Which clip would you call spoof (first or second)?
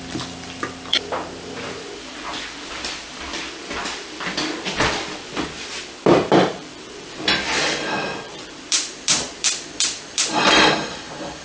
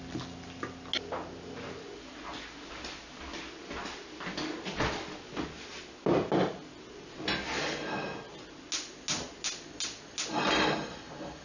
first